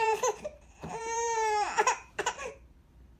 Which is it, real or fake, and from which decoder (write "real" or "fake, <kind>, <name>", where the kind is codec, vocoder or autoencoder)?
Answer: fake, vocoder, BigVGAN v2